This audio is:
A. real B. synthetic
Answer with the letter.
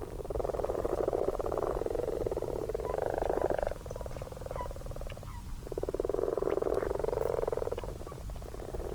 B